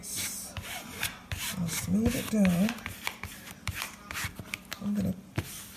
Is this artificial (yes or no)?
no